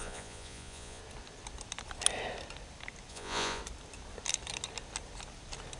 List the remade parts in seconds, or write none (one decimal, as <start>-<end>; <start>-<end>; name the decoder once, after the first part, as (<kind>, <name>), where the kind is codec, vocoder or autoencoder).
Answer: 0.0-1.0 (vocoder, Vocos); 3.1-3.6